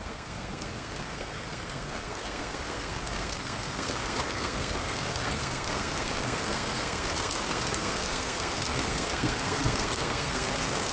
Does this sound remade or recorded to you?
remade